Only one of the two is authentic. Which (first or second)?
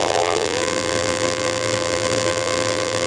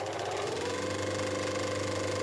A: second